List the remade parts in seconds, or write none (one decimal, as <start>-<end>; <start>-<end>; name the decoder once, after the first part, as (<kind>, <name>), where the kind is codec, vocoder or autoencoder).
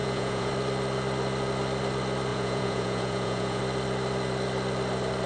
0.0-0.5 (vocoder, Vocos); 2.3-3.6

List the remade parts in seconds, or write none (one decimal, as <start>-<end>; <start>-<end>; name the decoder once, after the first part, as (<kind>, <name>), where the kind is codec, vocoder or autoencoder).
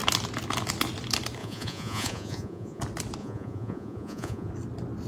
1.4-2.8 (vocoder, Vocos); 3.2-4.5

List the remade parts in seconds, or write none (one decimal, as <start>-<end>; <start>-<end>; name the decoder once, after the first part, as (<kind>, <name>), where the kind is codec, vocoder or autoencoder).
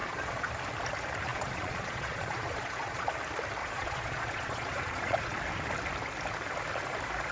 0.0-0.5 (vocoder, Vocos); 1.3-3.1; 3.6-5.4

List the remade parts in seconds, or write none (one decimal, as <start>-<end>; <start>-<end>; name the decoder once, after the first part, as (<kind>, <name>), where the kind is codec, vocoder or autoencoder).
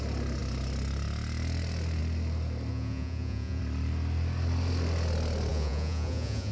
2.7-3.6 (vocoder, Vocos); 5.5-6.5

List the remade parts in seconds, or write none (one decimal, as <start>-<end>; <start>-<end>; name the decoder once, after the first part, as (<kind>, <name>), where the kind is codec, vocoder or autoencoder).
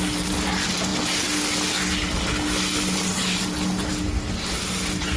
none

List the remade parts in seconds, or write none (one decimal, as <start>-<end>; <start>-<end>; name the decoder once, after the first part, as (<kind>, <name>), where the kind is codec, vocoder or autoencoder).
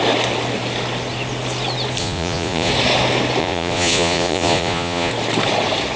2.0-2.7 (vocoder, Vocos); 3.4-5.1